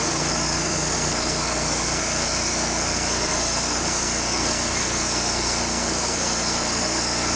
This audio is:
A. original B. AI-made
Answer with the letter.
B